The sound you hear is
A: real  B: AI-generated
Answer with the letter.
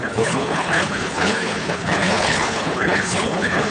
B